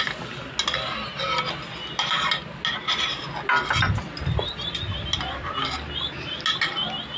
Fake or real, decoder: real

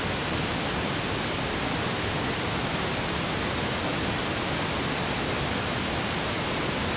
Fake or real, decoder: real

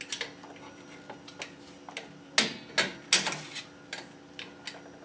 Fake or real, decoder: real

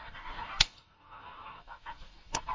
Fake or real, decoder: fake, codec, DAC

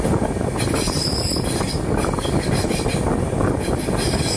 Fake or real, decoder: real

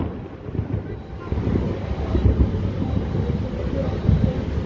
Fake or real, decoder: real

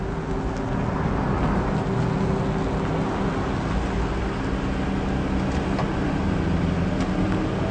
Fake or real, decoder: real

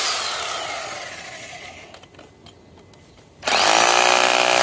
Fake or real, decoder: real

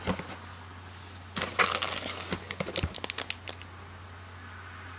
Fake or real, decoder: real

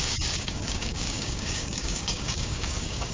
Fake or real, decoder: fake, codec, DAC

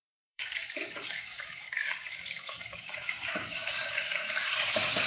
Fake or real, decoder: fake, codec, DAC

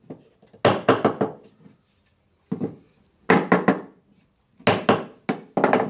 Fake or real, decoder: real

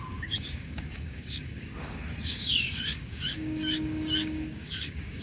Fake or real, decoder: fake, codec, DAC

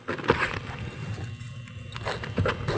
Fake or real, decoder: real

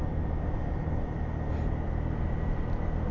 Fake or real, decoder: real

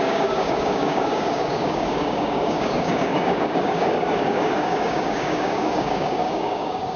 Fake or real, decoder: fake, codec, DAC